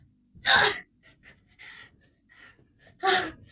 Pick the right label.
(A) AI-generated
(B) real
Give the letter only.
B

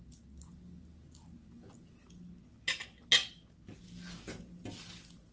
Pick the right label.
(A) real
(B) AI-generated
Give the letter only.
A